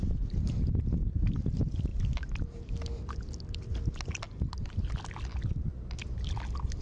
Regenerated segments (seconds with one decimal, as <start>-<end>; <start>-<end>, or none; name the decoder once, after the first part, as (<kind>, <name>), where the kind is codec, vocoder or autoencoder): none